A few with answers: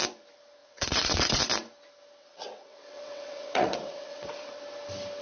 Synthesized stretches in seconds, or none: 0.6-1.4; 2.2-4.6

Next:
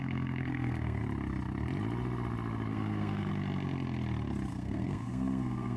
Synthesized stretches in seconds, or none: 0.0-1.0; 2.7-3.3; 4.5-5.8

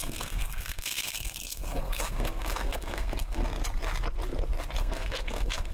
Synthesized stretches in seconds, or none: 0.0-3.4; 4.8-5.7

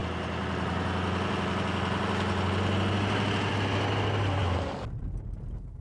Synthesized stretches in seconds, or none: none

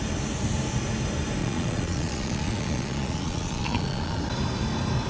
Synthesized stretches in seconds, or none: 1.4-4.2